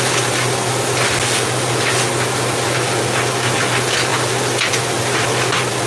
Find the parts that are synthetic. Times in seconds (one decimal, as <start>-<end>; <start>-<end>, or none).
none